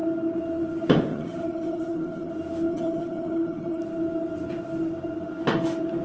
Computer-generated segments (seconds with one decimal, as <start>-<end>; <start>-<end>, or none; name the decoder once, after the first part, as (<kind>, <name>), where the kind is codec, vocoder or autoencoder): 1.1-2.3 (vocoder, HiFi-GAN); 2.7-3.8